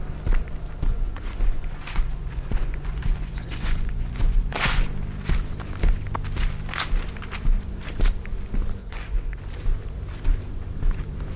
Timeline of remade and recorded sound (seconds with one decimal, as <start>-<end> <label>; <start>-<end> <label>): 0.0-0.9 recorded; 0.9-4.8 remade; 4.8-8.8 recorded; 8.8-9.4 remade; 9.4-11.4 recorded